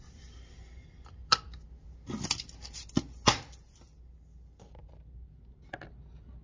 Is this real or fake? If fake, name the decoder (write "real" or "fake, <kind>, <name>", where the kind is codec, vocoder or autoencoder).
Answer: real